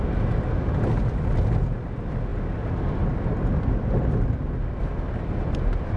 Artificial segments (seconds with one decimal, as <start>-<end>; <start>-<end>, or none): none